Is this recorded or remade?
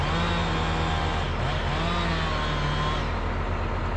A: recorded